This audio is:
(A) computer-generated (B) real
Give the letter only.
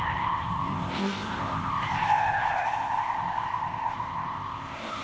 A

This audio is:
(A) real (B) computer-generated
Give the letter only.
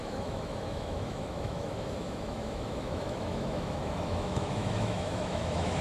B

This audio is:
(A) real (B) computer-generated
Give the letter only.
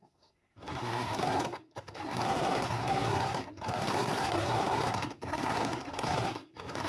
B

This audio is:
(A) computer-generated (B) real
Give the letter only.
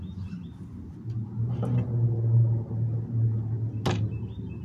B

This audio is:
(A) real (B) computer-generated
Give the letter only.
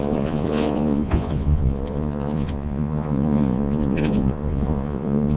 B